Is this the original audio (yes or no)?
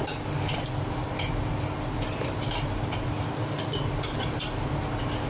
yes